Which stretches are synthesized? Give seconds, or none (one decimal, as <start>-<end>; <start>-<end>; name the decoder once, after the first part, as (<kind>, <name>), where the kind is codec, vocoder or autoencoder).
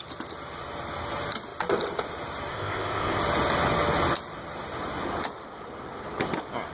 2.5-3.2 (codec, ZipCodec)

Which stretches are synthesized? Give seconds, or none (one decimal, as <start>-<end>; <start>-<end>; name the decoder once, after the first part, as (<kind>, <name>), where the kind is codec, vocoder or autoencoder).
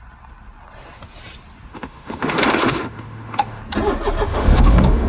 1.7-3.6 (autoencoder, DAC-VAE); 4.3-5.1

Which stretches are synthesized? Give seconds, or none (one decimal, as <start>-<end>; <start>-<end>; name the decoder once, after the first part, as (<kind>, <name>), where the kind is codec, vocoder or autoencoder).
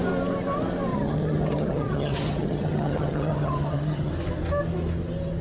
0.9-4.1 (vocoder, HiFi-GAN)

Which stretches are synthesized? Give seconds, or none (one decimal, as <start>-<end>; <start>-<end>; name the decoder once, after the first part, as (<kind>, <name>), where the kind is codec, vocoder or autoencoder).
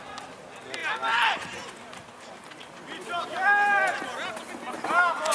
none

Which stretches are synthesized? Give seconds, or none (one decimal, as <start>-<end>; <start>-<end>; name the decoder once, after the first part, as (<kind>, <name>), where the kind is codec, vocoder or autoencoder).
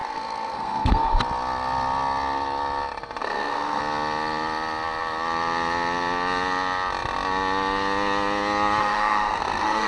0.0-1.2 (codec, SNAC); 3.2-3.8; 8.8-9.9